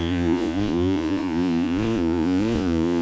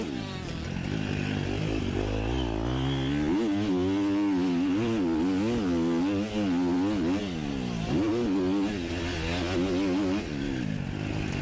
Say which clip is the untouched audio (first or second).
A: second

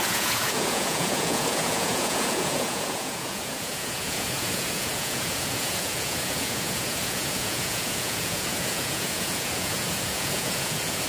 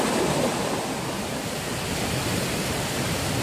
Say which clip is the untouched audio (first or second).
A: second